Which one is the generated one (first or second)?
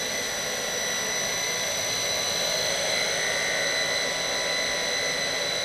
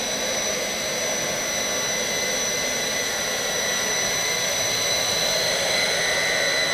second